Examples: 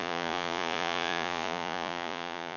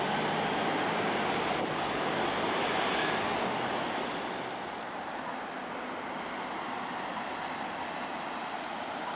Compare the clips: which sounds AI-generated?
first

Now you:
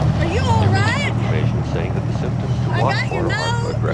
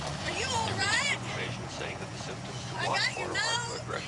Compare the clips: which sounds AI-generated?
second